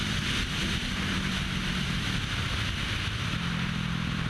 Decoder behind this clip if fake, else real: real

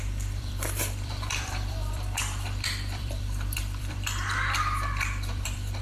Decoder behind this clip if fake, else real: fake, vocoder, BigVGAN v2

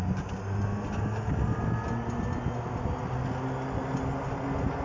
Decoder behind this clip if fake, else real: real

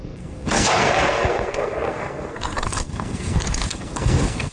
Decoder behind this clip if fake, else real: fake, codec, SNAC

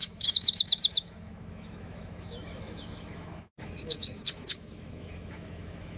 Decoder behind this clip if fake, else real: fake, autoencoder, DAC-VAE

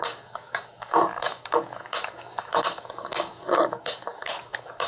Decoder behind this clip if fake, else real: fake, codec, DAC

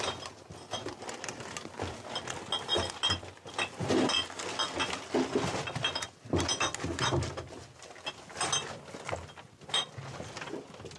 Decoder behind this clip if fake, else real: real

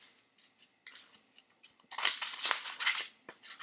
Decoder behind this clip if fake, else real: real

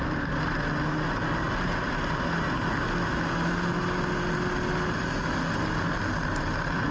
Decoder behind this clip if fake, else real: real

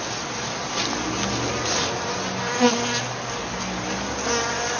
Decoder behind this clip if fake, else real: real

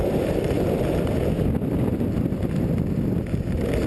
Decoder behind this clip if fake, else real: real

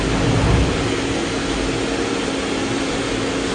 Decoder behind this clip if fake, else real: real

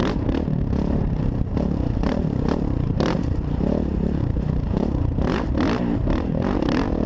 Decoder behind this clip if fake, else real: fake, vocoder, BigVGAN v2